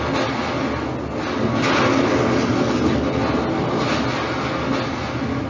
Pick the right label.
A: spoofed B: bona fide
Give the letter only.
B